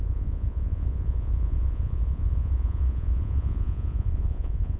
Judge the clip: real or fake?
fake